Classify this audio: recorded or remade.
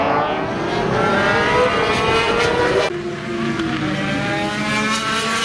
recorded